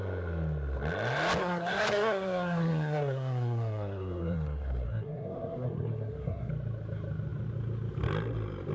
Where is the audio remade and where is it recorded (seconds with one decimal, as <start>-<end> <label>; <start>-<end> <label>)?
0.0-1.4 recorded; 1.4-6.5 remade; 6.5-8.7 recorded